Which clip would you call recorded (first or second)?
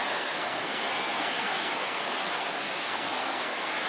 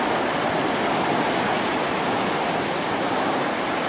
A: second